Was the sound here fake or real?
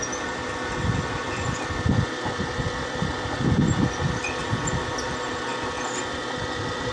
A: real